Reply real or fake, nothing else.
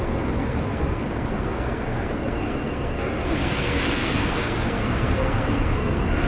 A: fake